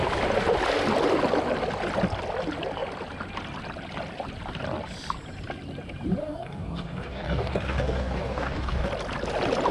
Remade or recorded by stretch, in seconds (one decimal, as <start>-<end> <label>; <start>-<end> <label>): 0.0-6.2 recorded; 6.2-8.9 remade; 8.9-9.7 recorded